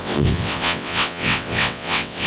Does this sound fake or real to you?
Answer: fake